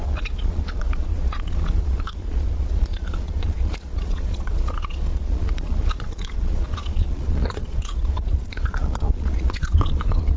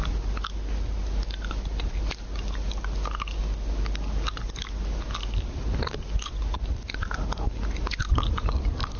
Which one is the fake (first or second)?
first